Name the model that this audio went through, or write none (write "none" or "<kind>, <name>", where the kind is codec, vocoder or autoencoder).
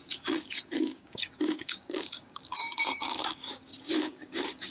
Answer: codec, DAC